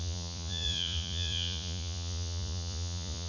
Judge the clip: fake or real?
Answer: fake